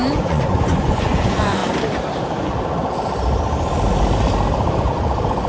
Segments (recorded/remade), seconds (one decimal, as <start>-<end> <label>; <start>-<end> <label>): 0.0-1.6 remade; 1.6-4.9 recorded; 4.9-5.5 remade